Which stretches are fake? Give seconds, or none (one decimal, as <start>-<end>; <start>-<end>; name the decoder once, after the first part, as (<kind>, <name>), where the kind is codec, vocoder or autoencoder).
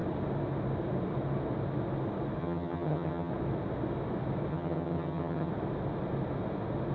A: 2.4-3.3 (vocoder, HiFi-GAN); 4.5-5.5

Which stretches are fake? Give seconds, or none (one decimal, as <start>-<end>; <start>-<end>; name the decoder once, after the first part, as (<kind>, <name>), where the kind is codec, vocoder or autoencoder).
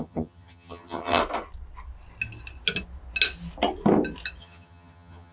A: 0.0-1.2 (vocoder, HiFi-GAN); 4.4-5.3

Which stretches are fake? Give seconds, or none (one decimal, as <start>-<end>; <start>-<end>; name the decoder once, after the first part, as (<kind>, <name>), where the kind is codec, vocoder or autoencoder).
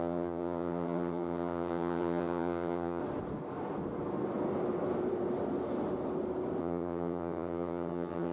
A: 0.0-3.0 (vocoder, HiFi-GAN); 6.6-8.3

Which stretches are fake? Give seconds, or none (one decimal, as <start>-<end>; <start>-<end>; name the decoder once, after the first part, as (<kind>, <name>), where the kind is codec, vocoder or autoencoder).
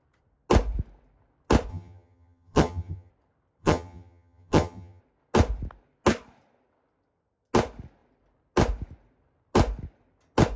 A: 1.7-3.1 (vocoder, HiFi-GAN); 3.6-5.0